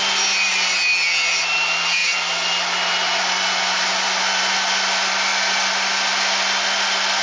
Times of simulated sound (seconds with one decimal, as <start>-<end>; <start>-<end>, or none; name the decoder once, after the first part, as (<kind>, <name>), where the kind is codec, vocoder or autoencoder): none